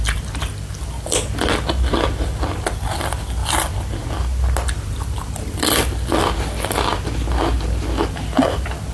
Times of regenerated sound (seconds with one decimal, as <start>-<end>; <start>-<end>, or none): none